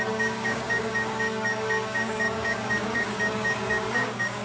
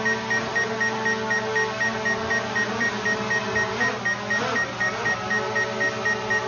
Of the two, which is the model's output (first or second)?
first